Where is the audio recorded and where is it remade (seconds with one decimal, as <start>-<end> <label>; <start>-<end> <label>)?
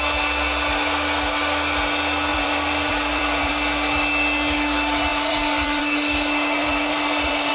0.0-2.3 recorded; 2.3-3.5 remade; 3.5-5.1 recorded; 5.1-5.8 remade; 5.8-6.6 recorded; 6.6-7.5 remade